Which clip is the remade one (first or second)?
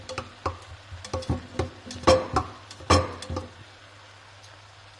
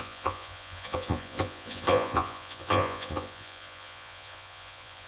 second